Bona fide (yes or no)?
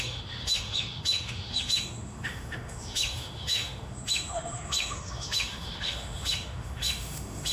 no